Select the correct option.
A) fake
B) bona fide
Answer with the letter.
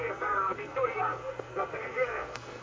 A